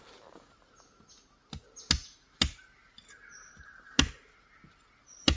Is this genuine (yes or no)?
yes